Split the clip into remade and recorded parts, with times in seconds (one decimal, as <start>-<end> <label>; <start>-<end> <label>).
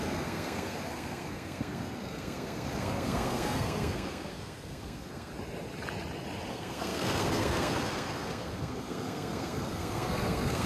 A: 0.0-5.3 remade; 5.3-6.5 recorded; 6.5-10.7 remade